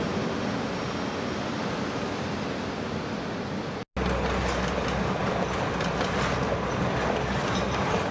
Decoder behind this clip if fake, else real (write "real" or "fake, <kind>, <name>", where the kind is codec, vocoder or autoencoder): real